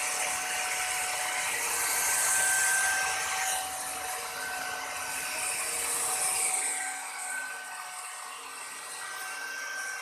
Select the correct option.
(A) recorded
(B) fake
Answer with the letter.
A